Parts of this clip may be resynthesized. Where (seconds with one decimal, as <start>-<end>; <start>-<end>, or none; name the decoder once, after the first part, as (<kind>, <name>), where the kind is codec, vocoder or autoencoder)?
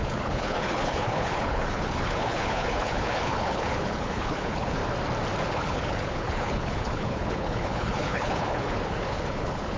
0.0-4.8 (codec, HILCodec); 5.5-9.8